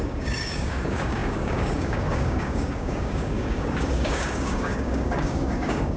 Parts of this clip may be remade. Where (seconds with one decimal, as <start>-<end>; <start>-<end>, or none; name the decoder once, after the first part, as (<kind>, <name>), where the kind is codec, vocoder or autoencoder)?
0.0-6.0 (codec, DAC)